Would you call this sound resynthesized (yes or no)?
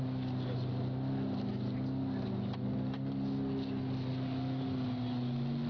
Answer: no